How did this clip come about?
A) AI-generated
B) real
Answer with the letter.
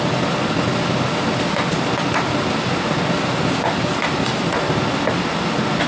B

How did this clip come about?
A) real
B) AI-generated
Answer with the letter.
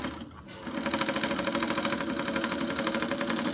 A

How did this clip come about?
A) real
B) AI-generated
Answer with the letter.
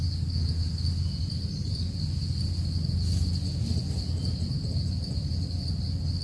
A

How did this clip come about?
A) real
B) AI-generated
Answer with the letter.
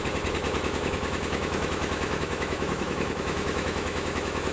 B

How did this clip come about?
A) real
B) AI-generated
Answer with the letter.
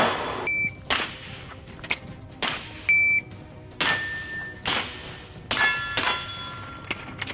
A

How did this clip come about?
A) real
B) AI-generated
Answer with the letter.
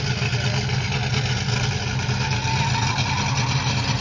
A